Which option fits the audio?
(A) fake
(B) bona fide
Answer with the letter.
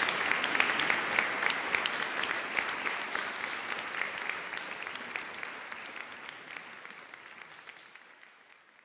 B